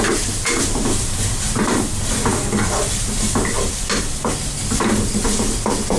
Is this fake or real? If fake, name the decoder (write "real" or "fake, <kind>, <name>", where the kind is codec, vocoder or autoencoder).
fake, vocoder, BigVGAN v2